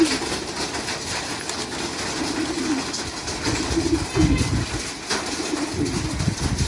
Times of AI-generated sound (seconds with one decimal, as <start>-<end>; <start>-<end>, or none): none